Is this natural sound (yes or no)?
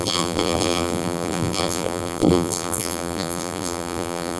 no